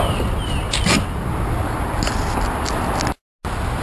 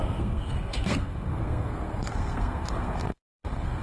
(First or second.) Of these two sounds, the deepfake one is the second